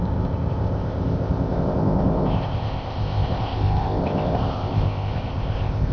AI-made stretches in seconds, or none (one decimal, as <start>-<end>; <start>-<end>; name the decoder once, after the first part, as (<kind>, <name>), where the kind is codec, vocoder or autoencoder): 0.0-5.9 (codec, ZipCodec)

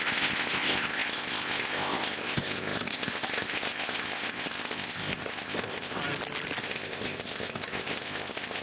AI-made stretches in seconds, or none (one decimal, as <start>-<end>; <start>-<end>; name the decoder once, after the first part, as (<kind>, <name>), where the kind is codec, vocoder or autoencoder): 0.0-6.0 (codec, ZipCodec); 6.6-8.6

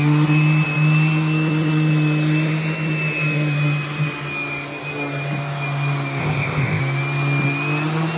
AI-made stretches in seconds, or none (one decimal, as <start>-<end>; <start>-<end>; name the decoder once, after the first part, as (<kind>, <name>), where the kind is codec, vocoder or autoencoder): 6.2-6.8 (codec, ZipCodec)

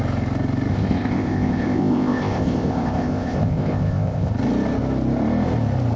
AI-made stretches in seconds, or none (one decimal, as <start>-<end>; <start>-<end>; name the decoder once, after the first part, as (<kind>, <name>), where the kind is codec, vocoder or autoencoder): 0.7-4.3 (codec, ZipCodec)

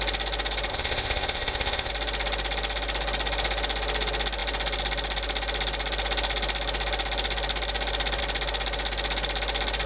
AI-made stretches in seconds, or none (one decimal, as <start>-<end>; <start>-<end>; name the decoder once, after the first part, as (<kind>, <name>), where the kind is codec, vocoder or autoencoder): 0.7-1.9 (codec, ZipCodec)

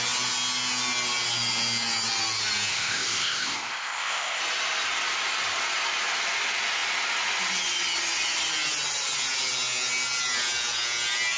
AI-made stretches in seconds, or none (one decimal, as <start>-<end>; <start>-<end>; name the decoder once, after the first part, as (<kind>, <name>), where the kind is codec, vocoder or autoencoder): 2.7-4.4 (codec, ZipCodec)

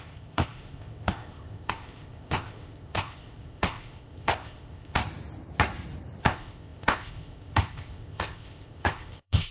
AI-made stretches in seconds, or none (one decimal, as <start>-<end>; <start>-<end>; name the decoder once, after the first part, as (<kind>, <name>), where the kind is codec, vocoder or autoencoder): 0.0-5.0 (codec, ZipCodec); 6.2-9.5